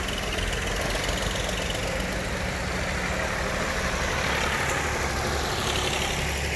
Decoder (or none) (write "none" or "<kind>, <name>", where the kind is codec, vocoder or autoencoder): none